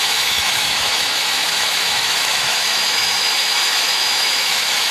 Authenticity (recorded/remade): remade